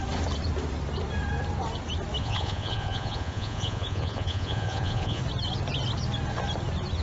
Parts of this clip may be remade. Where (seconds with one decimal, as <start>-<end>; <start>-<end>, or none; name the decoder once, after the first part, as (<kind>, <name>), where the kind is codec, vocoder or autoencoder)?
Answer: 2.2-5.2 (vocoder, Vocos)